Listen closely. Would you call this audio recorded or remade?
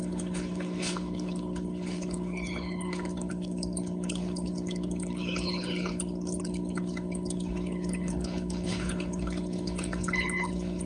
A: remade